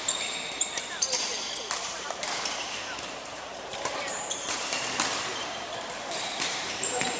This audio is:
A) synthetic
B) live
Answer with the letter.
A